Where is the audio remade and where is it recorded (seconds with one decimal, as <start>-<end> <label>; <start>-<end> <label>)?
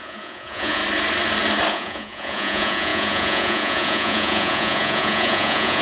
0.0-0.8 remade; 0.8-1.7 recorded; 1.7-5.8 remade